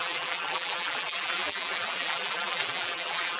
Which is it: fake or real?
fake